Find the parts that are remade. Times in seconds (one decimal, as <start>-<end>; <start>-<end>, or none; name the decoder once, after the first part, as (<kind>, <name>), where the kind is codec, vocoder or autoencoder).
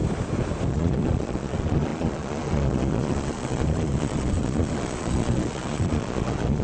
0.7-6.6 (vocoder, Vocos)